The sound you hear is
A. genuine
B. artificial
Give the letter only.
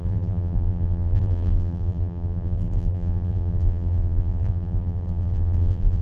B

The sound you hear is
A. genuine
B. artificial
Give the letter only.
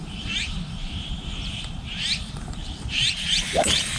B